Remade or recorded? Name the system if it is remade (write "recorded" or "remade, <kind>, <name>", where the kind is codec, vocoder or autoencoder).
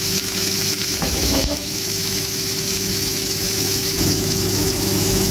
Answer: remade, autoencoder, DAC-VAE